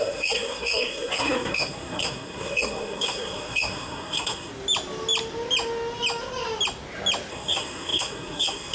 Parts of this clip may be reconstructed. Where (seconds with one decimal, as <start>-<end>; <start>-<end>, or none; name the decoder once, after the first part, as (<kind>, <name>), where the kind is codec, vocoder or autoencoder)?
0.0-4.5 (codec, SNAC); 7.3-8.7